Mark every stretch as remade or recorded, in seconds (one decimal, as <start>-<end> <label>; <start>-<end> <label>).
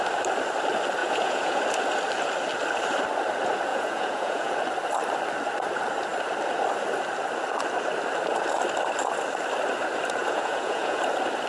0.0-1.0 recorded; 1.0-1.6 remade; 1.6-3.7 recorded; 3.7-4.5 remade; 4.5-10.2 recorded; 10.2-11.0 remade; 11.0-11.5 recorded